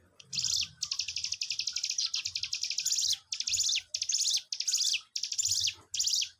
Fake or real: real